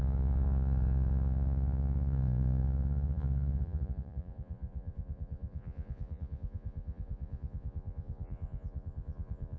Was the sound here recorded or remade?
remade